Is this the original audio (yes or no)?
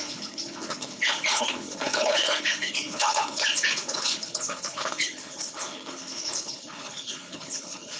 no